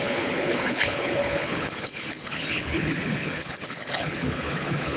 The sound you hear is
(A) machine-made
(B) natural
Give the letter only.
A